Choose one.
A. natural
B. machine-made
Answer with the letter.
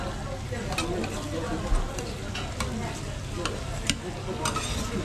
A